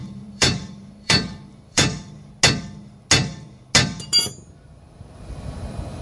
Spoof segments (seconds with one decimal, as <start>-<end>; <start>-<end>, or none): 0.0-2.3